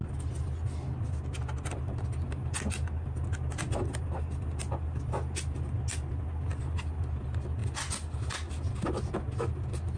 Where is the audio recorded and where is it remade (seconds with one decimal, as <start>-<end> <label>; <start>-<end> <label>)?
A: 0.0-10.0 recorded